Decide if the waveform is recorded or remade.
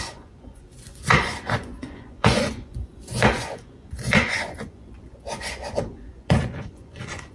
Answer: remade